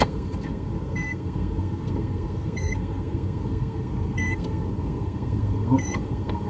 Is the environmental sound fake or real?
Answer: fake